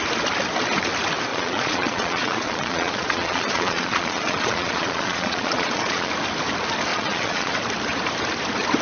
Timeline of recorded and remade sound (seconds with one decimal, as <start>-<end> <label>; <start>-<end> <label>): 0.0-1.3 recorded; 1.3-6.1 remade; 6.1-6.9 recorded; 6.9-7.5 remade; 7.5-8.8 recorded